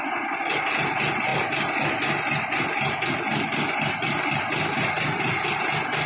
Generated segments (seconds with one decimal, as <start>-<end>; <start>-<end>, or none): 1.3-4.6